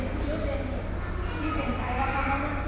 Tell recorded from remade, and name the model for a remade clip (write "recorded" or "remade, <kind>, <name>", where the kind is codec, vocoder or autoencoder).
recorded